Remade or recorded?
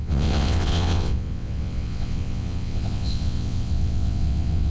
remade